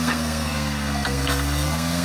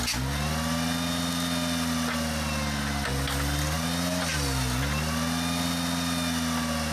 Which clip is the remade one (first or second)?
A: first